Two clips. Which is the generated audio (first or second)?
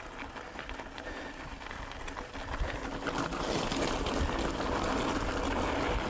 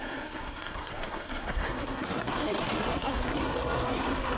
second